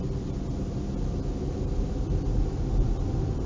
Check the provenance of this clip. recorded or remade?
recorded